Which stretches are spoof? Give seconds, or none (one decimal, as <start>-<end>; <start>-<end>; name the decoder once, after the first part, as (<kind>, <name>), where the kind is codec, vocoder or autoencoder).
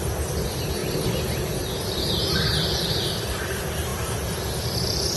0.0-3.9 (vocoder, BigVGAN v2); 4.6-5.2